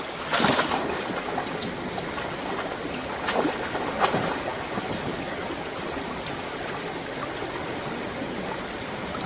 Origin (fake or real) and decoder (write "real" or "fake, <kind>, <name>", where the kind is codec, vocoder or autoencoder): real